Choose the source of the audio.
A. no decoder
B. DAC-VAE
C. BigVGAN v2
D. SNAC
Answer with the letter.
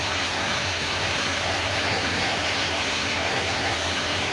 D